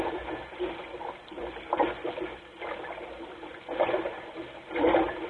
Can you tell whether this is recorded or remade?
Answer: recorded